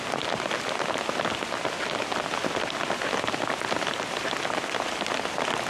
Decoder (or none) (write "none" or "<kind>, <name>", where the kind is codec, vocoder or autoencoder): none